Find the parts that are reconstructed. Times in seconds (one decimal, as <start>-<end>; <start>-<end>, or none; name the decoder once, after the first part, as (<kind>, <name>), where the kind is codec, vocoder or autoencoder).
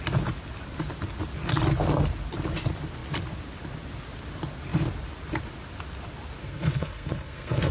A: 6.4-7.7 (codec, SNAC)